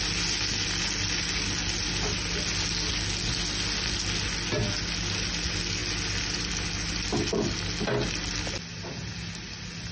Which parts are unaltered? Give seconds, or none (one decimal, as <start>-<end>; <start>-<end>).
0.0-9.9